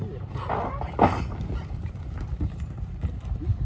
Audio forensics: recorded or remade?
recorded